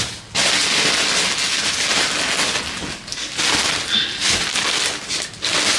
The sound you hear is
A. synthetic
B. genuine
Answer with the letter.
B